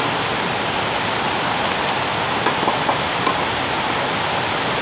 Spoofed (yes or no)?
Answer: no